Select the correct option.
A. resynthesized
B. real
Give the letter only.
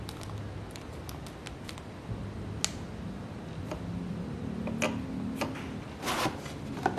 B